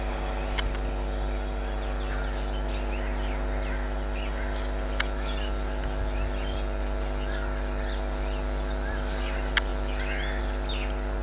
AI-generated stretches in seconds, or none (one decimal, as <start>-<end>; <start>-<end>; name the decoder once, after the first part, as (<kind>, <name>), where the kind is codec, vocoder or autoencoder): none